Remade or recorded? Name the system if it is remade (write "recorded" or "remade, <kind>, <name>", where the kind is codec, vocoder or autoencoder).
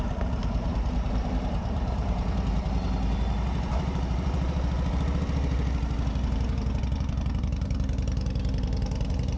remade, vocoder, BigVGAN v2